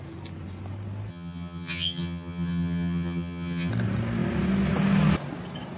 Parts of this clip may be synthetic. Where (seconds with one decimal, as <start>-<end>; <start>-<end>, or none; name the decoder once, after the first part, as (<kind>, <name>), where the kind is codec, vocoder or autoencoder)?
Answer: 1.1-3.7 (vocoder, HiFi-GAN)